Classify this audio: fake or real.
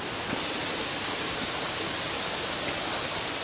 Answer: real